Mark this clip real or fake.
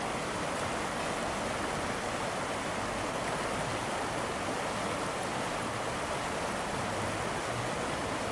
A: real